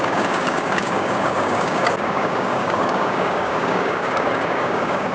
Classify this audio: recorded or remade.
remade